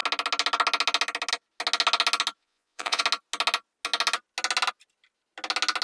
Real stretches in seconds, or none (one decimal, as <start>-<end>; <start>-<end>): 0.0-2.4; 3.0-5.8